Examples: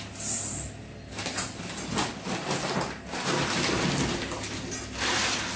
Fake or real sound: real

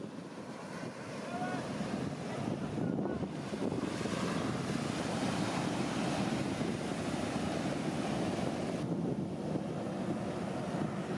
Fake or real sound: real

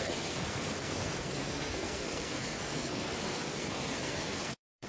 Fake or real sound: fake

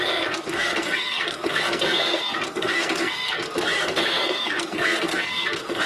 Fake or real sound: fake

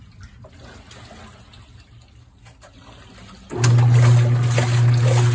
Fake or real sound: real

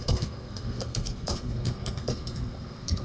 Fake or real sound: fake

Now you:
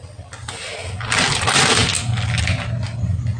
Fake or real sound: real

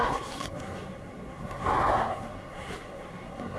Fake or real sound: fake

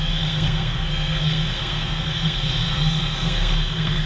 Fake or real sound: fake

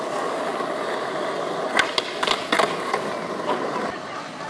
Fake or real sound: real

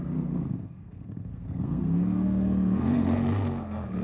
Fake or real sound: fake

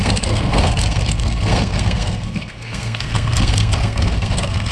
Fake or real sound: fake